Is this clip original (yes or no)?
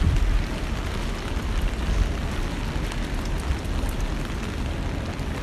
yes